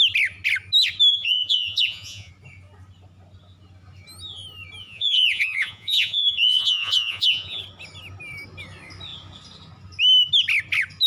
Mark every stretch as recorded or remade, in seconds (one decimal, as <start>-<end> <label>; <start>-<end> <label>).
0.0-1.1 recorded; 1.1-2.3 remade; 2.3-4.8 recorded; 4.8-7.6 remade; 7.6-11.1 recorded